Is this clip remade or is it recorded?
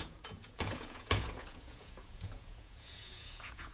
remade